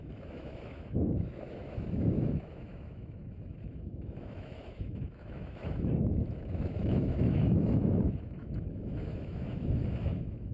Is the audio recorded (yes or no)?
no